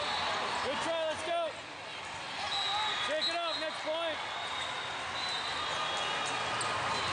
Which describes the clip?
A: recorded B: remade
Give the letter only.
A